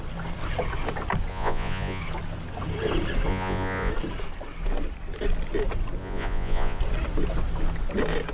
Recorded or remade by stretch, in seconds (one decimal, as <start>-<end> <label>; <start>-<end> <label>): 0.0-1.3 recorded; 1.3-2.0 remade; 2.0-3.3 recorded; 3.3-3.9 remade; 3.9-6.0 recorded; 6.0-6.8 remade; 6.8-8.3 recorded